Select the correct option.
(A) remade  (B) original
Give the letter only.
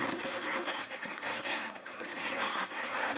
A